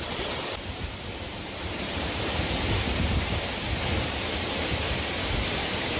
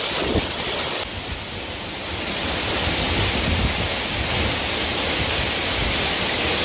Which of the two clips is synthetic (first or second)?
first